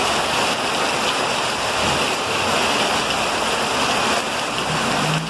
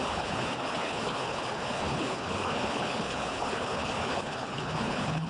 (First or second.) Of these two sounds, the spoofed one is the second